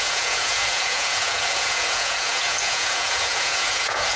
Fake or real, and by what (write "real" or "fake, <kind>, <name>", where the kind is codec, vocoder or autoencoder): fake, vocoder, Vocos